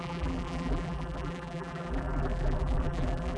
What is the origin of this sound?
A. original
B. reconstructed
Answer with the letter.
B